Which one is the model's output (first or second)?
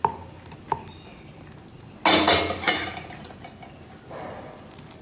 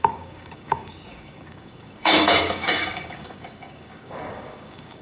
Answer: second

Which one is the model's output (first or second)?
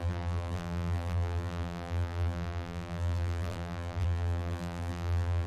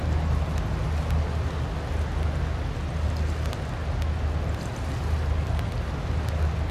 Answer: first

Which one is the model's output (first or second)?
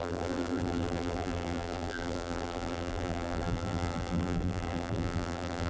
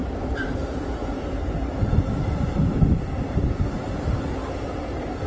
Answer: first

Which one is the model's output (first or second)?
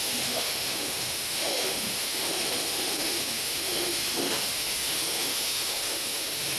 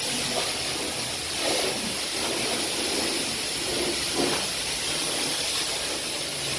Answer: first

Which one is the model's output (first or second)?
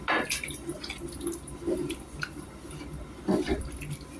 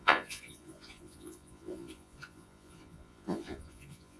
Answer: second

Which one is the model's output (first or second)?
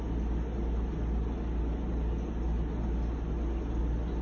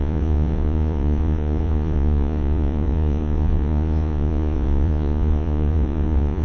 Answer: second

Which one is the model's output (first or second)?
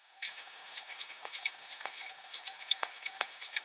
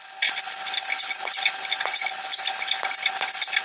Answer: first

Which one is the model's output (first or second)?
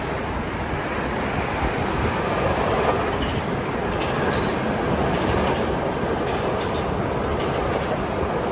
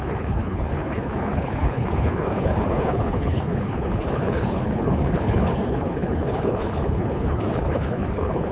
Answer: second